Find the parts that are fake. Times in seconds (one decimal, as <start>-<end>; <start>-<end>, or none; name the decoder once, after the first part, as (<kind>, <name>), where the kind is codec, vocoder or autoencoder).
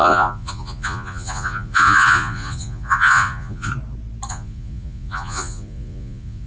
0.0-3.7 (vocoder, Vocos); 4.3-6.5